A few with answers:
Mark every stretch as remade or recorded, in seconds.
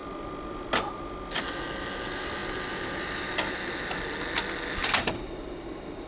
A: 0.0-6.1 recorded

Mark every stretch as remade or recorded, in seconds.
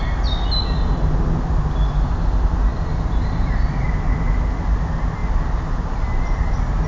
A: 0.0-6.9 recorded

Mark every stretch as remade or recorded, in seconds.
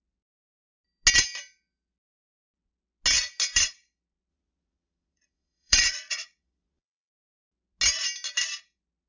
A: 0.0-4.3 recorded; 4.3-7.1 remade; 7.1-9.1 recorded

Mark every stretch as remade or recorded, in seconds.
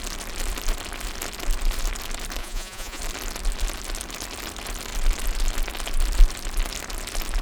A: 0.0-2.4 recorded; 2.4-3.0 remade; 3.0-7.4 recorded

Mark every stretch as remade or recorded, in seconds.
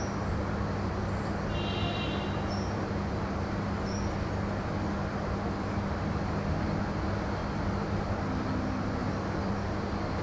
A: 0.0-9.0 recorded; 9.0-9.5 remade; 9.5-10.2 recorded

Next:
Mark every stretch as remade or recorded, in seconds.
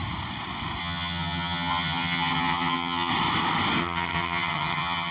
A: 0.0-0.8 recorded; 0.8-3.1 remade; 3.1-3.8 recorded; 3.8-5.1 remade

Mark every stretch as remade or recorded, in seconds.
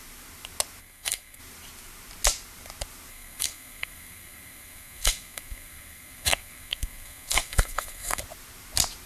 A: 0.0-0.8 recorded; 0.8-1.4 remade; 1.4-3.1 recorded; 3.1-8.2 remade; 8.2-9.1 recorded